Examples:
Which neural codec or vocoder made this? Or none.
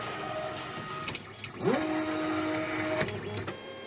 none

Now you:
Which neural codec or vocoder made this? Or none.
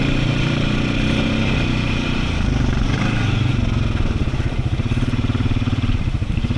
vocoder, BigVGAN v2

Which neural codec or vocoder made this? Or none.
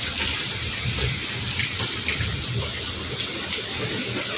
none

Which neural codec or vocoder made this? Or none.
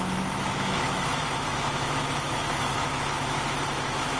autoencoder, DAC-VAE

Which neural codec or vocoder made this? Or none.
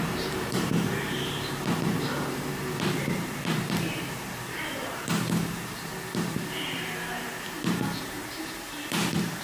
vocoder, BigVGAN v2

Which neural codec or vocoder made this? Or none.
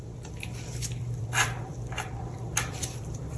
vocoder, BigVGAN v2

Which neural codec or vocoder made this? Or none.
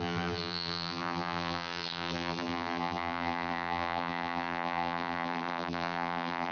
vocoder, BigVGAN v2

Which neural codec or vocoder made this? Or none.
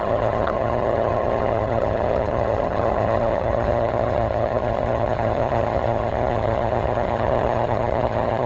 vocoder, HiFi-GAN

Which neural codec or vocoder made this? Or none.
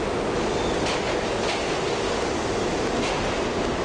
none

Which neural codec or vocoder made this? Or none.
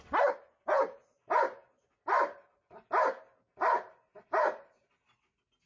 none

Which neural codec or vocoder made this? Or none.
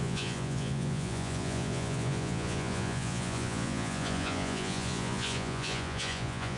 vocoder, Vocos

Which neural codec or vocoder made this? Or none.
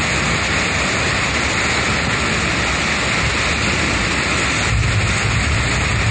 none